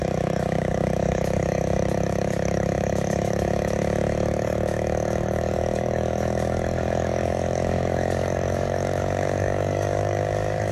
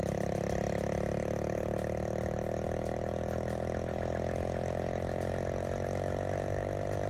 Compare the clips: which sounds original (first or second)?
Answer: second